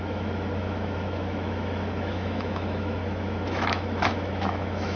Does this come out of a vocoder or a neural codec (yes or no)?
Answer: yes